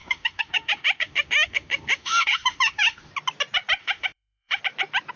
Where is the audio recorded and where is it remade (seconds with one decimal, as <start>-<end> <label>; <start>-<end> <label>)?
0.0-3.1 remade; 3.1-3.8 recorded; 3.8-4.6 remade; 4.6-5.2 recorded